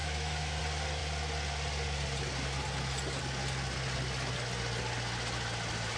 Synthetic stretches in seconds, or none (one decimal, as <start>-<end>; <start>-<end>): 0.0-0.6